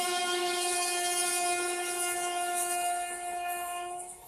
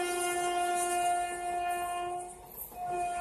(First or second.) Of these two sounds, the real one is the second